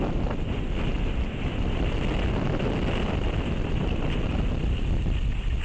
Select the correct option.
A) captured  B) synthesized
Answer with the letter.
A